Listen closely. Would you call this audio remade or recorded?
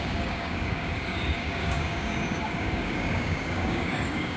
remade